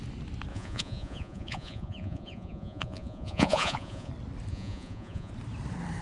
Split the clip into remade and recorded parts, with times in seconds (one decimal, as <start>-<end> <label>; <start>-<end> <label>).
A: 0.0-0.5 recorded; 0.5-4.1 remade; 4.1-4.5 recorded; 4.5-5.3 remade; 5.3-6.0 recorded